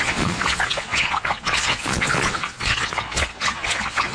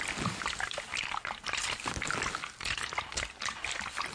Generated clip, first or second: first